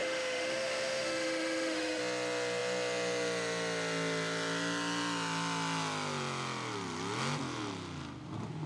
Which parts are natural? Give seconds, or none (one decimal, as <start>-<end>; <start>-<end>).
2.0-8.7